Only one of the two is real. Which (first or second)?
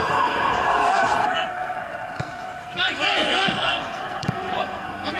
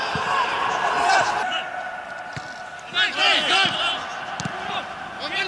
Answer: second